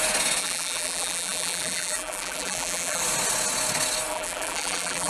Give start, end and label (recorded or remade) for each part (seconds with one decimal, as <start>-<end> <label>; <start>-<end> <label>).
0.0-0.4 recorded; 0.4-3.0 remade; 3.0-4.1 recorded; 4.1-5.1 remade